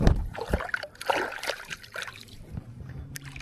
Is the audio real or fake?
fake